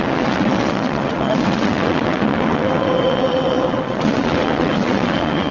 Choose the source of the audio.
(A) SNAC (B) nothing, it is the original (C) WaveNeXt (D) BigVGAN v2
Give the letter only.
C